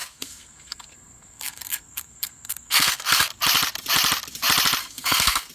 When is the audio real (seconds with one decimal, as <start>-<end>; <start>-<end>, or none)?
3.3-4.8